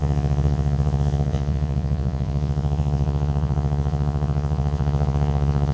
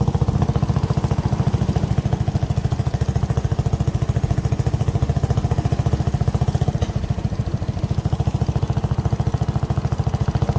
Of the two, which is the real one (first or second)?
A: second